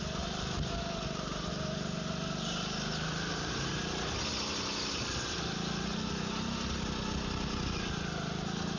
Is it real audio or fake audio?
real